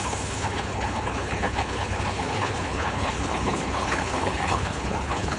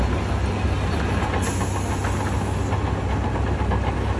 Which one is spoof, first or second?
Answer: first